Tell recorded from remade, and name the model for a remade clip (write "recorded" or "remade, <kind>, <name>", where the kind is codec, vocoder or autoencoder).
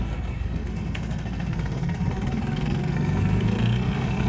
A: remade, codec, SNAC